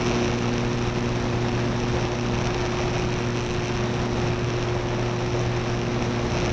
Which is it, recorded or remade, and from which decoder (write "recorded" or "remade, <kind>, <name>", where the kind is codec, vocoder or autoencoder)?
recorded